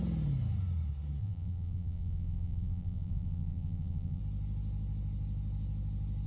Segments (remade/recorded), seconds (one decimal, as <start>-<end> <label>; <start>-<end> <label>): 0.0-1.2 recorded; 1.2-4.2 remade; 4.2-6.3 recorded